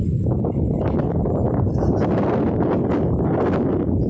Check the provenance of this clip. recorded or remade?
recorded